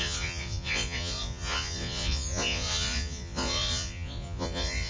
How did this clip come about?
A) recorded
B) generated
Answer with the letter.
B